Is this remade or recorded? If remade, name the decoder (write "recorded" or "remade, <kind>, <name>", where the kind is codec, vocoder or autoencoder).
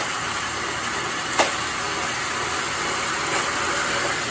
recorded